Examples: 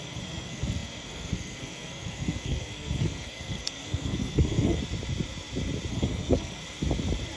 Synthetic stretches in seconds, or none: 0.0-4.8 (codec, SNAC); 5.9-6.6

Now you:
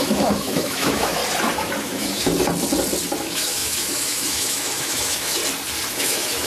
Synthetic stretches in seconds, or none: 0.0-1.2 (autoencoder, DAC-VAE); 1.8-2.3; 3.2-5.4; 5.9-6.5

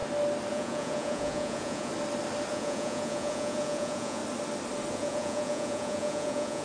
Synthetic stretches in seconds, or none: 0.5-1.9 (vocoder, Vocos); 2.5-4.2; 4.9-6.6

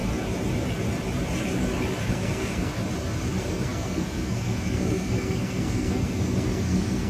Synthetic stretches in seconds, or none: 2.1-2.7 (codec, SNAC); 3.3-7.1

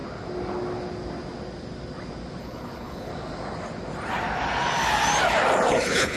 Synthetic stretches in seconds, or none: 2.4-3.1 (codec, HILCodec); 5.7-6.2

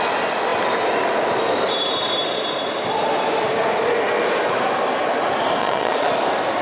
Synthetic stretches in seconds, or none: 5.6-6.1 (vocoder, Vocos)

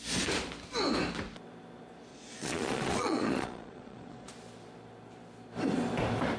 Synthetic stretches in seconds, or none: 2.1-4.3 (vocoder, Vocos)

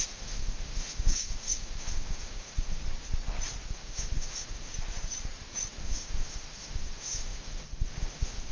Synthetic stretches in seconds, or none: 0.0-2.8 (autoencoder, DAC-VAE); 3.7-4.7; 5.8-8.5